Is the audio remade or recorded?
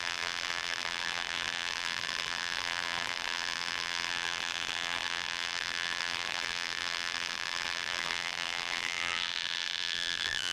remade